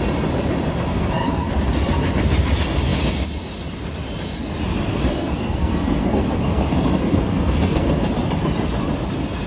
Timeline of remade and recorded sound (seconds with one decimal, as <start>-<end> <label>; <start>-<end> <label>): 0.0-0.9 recorded; 0.9-1.5 remade; 1.5-4.9 recorded; 4.9-8.1 remade; 8.1-9.5 recorded